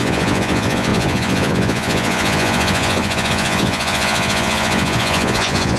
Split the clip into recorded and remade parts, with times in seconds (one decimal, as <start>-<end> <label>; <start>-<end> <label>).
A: 0.0-5.8 remade